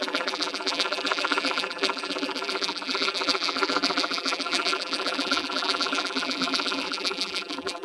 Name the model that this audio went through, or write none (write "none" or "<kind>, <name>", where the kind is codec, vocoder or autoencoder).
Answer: vocoder, BigVGAN v2